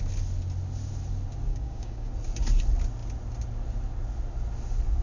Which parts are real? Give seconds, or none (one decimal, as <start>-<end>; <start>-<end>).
0.0-1.5; 2.1-5.0